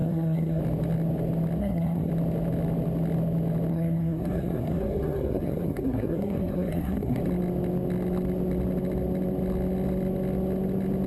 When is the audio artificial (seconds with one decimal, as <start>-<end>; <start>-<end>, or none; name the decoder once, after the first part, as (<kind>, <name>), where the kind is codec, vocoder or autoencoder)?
0.0-0.6 (codec, SNAC); 1.6-2.1; 3.7-7.2